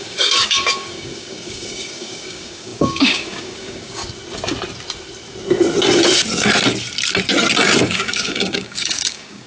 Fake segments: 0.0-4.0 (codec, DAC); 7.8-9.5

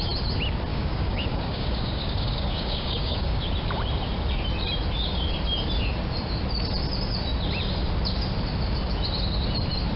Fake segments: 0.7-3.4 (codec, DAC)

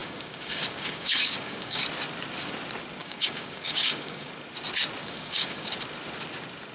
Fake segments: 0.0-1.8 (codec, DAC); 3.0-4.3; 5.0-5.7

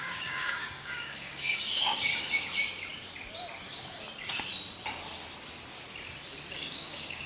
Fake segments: 0.0-2.1 (codec, DAC); 6.5-7.3